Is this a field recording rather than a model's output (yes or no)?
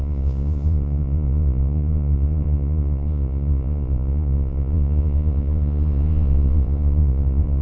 no